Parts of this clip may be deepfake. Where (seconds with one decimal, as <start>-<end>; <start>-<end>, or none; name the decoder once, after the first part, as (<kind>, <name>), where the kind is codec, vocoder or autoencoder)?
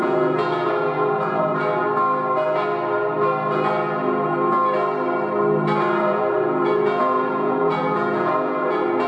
0.0-1.5 (vocoder, Vocos); 6.0-9.1